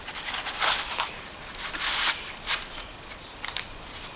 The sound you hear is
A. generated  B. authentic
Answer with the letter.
A